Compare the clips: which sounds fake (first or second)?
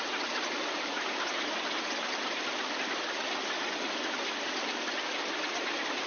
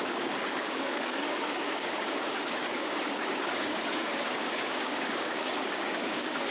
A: second